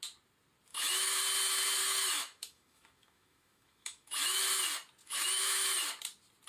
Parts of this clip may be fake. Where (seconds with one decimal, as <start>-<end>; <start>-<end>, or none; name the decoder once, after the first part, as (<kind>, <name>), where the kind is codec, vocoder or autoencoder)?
0.7-1.2 (autoencoder, DAC-VAE); 1.8-4.4; 5.0-5.6